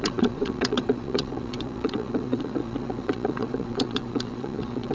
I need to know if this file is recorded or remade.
remade